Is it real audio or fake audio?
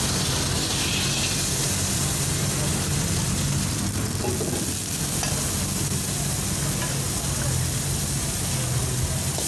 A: real